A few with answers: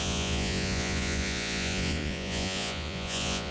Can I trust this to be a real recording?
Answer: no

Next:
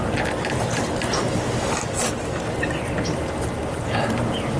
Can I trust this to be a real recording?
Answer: yes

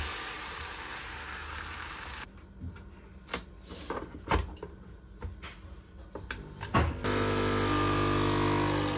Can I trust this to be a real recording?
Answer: yes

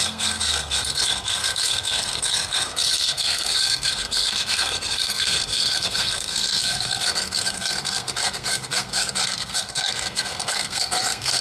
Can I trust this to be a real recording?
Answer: no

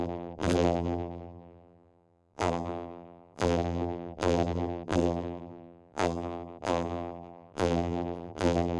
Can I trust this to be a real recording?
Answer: no